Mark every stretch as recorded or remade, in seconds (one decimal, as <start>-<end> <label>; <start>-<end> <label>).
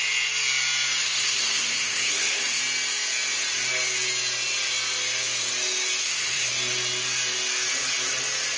0.0-1.0 recorded; 1.0-2.6 remade; 2.6-6.0 recorded; 6.0-6.5 remade; 6.5-8.6 recorded